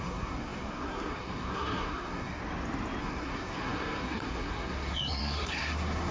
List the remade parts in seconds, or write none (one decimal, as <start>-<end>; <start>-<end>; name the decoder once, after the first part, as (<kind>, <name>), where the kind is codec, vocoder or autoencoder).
0.0-2.4 (codec, SNAC); 3.0-6.1